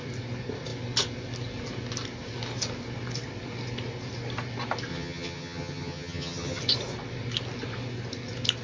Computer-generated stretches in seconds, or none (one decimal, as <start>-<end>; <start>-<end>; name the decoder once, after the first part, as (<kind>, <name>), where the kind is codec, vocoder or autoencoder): 4.9-6.6 (vocoder, HiFi-GAN)